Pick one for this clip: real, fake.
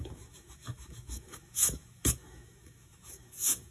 fake